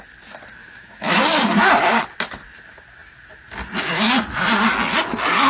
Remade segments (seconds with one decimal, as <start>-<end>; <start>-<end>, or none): 0.6-1.2